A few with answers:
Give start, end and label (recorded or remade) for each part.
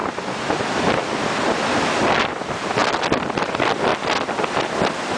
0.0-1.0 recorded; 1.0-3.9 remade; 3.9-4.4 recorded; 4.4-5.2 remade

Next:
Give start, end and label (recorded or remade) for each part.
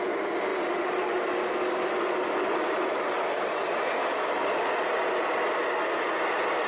0.0-0.5 recorded; 0.5-1.3 remade; 1.3-6.7 recorded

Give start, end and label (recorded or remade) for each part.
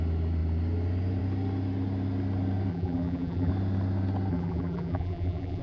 0.0-2.7 recorded; 2.7-3.5 remade; 3.5-4.3 recorded; 4.3-5.6 remade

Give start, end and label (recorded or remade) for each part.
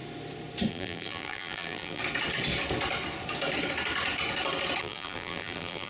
0.0-0.7 recorded; 0.7-2.0 remade; 2.0-4.8 recorded; 4.8-5.9 remade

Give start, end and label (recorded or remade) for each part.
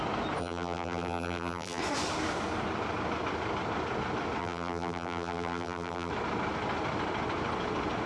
0.0-0.4 recorded; 0.4-1.8 remade; 1.8-4.4 recorded; 4.4-6.1 remade; 6.1-8.1 recorded